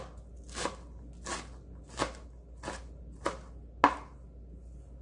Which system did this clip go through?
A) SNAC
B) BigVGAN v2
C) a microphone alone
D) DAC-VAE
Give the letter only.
C